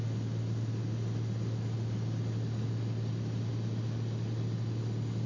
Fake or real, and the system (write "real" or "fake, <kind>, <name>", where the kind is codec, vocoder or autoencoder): real